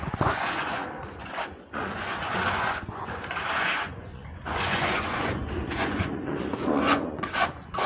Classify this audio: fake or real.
fake